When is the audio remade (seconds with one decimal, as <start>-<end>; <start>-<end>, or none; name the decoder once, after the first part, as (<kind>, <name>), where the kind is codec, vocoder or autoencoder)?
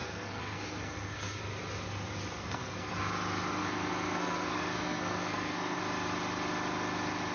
0.0-1.4 (codec, SNAC); 2.4-3.0; 3.6-5.8